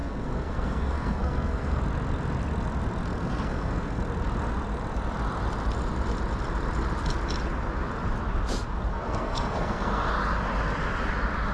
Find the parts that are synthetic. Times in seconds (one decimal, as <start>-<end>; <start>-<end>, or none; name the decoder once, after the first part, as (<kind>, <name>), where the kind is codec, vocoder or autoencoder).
0.0-1.8 (codec, SNAC); 3.1-4.0; 8.9-10.1

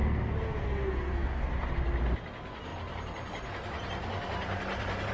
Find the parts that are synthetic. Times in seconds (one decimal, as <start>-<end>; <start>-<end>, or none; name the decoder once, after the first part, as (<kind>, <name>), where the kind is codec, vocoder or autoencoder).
0.0-1.4 (codec, SNAC)

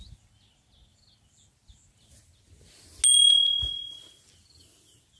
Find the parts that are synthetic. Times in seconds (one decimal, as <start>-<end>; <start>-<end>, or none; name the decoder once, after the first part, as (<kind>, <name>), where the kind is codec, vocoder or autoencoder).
none

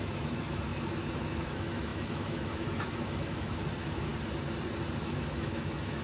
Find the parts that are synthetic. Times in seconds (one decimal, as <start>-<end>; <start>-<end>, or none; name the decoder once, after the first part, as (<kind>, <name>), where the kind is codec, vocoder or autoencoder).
0.0-4.1 (autoencoder, DAC-VAE); 5.0-6.0

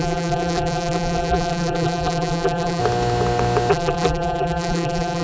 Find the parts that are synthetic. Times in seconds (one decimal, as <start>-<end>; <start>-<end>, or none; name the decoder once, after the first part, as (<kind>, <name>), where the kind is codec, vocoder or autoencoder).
0.0-2.8 (vocoder, BigVGAN v2); 3.7-5.2